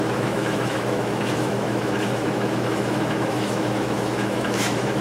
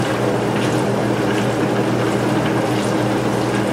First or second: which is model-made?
first